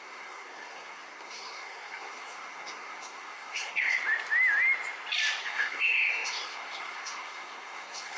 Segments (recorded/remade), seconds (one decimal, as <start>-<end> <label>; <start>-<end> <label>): 0.0-4.0 remade; 4.0-5.4 recorded; 5.4-8.2 remade